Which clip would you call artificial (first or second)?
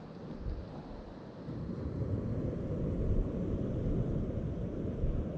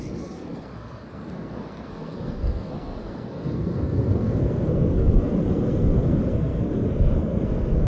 second